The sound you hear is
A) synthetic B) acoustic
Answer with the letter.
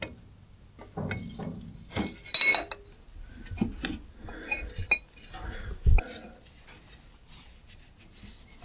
B